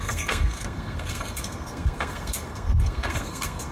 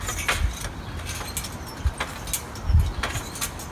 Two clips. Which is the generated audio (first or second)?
first